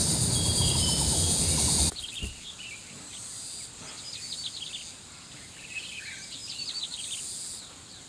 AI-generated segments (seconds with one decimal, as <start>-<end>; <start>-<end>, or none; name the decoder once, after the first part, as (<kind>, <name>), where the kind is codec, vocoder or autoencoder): 6.4-7.2 (vocoder, BigVGAN v2)